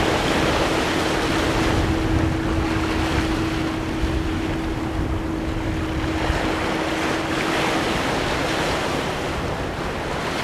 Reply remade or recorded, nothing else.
recorded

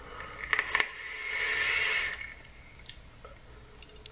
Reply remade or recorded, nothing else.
recorded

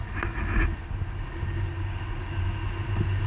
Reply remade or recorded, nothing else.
recorded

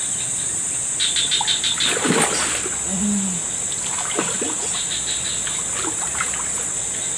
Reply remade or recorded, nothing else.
recorded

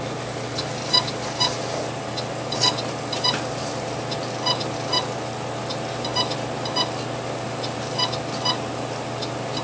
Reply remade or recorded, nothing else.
recorded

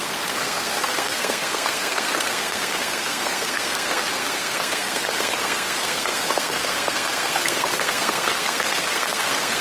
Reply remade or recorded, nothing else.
remade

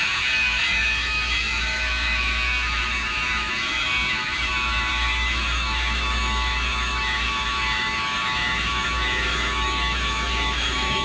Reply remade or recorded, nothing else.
remade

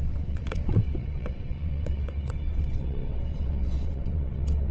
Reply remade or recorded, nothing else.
remade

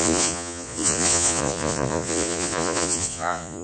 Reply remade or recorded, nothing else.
remade